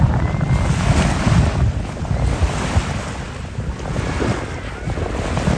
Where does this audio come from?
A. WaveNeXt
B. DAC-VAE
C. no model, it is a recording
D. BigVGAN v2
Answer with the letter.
C